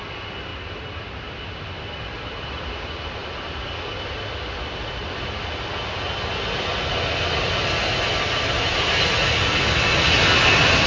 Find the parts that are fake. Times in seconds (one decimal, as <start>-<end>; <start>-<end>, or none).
0.5-2.6; 3.2-3.7; 8.7-9.4

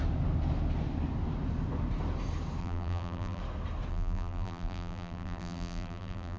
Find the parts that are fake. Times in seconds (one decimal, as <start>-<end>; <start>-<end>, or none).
2.6-3.4; 3.9-6.4